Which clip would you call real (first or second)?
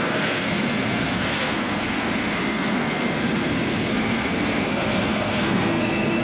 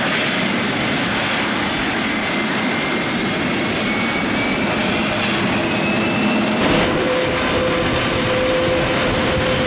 second